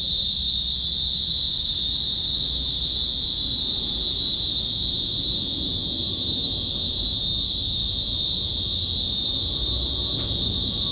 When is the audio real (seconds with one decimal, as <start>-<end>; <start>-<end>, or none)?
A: 0.0-1.5; 2.8-10.9